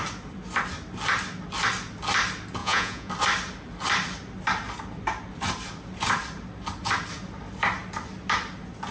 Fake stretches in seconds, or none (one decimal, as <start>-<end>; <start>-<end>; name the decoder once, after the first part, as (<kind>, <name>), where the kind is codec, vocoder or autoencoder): 2.6-3.1 (vocoder, Vocos)